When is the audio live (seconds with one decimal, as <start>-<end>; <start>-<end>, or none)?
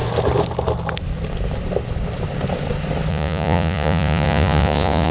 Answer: 0.0-3.1